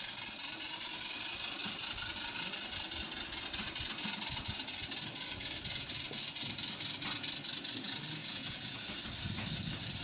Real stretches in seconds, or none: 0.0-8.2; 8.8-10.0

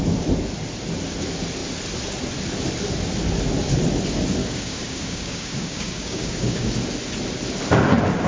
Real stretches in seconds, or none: 0.0-4.4; 6.7-8.3

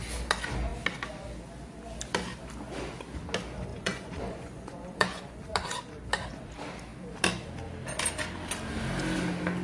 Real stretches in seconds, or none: 0.0-3.7; 5.4-9.6

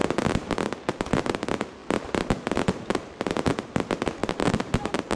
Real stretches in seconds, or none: 0.0-4.2

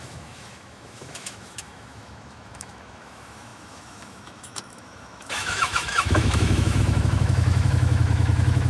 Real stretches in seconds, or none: none

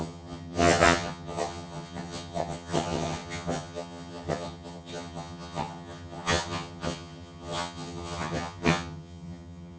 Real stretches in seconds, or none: none

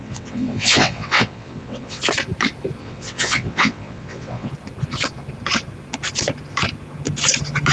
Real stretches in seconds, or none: 2.0-2.8; 4.5-7.7